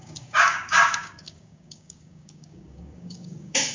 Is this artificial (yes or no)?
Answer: yes